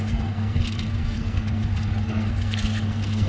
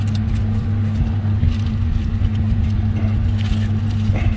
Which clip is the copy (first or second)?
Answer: first